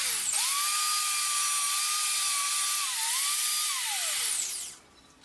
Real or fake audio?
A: real